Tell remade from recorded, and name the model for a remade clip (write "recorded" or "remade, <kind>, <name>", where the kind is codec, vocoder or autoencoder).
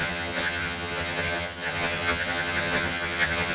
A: remade, vocoder, HiFi-GAN